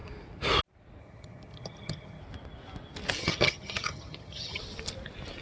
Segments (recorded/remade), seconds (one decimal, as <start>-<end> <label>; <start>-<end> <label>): 0.0-1.0 recorded; 1.0-2.2 remade; 2.2-3.2 recorded; 3.2-4.6 remade; 4.6-5.4 recorded